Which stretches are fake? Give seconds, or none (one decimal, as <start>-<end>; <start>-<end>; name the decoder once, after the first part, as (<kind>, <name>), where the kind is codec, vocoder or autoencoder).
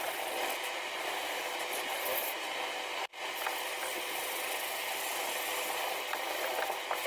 none